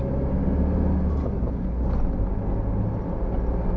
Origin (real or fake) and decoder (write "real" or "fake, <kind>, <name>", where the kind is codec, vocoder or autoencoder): real